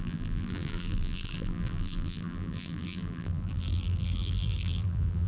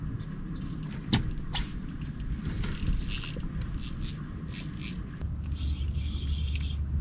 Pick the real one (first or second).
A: second